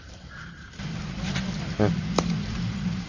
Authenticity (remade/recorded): remade